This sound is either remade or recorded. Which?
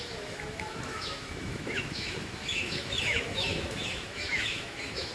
remade